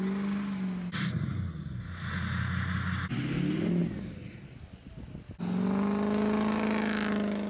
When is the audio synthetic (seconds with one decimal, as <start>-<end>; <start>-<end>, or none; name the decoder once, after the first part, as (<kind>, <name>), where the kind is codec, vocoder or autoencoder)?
none